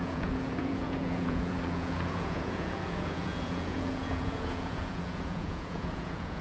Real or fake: fake